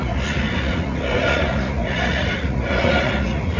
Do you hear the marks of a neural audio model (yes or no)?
yes